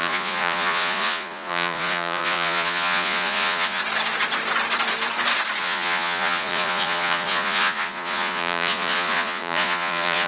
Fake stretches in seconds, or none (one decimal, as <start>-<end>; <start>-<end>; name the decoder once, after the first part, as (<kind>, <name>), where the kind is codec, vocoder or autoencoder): 0.0-3.8 (vocoder, Vocos); 5.6-10.3